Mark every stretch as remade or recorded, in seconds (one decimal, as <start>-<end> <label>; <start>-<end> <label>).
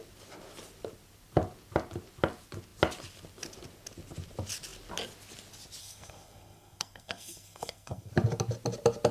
0.0-5.8 recorded; 5.8-8.1 remade; 8.1-9.1 recorded